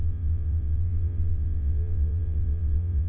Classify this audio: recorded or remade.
remade